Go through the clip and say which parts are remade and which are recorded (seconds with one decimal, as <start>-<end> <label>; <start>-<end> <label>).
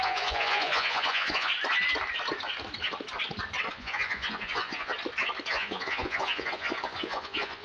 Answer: 0.0-1.5 remade; 1.5-3.7 recorded; 3.7-4.9 remade; 4.9-5.5 recorded; 5.5-7.6 remade